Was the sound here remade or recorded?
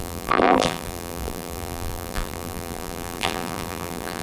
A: remade